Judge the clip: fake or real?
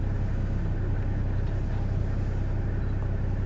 real